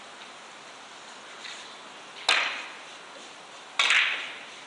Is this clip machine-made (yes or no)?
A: no